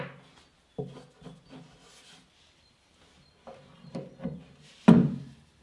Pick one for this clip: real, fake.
real